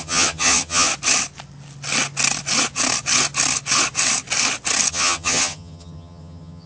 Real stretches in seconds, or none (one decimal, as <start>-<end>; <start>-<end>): 0.9-4.9